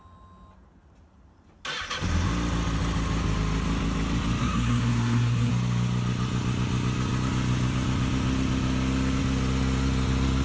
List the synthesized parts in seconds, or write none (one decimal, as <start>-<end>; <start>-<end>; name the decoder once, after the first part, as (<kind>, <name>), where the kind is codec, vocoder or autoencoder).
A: 4.4-5.5 (codec, SNAC)